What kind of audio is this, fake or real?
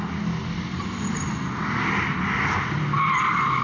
real